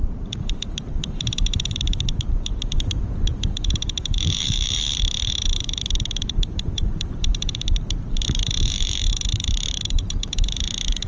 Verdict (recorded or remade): remade